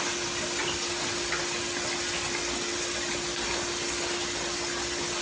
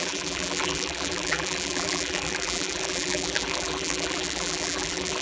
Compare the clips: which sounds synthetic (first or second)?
second